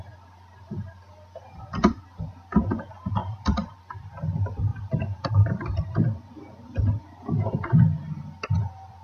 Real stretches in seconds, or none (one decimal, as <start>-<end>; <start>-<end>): 0.0-3.2; 3.8-4.7; 7.0-9.0